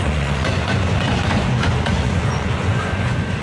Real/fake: fake